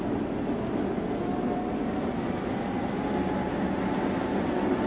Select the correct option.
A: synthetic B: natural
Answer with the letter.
B